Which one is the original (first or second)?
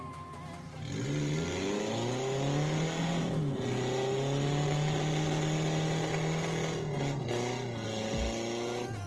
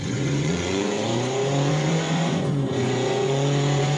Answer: first